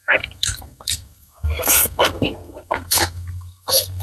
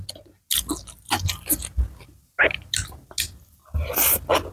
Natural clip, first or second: second